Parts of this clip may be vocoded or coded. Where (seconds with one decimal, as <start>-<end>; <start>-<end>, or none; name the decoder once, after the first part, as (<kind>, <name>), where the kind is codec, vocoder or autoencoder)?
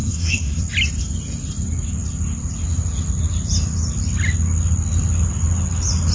0.0-0.6 (codec, SNAC)